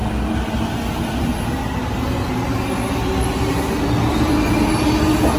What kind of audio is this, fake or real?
real